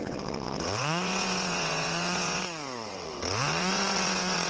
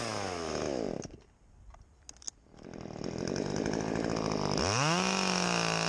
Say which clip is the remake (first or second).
first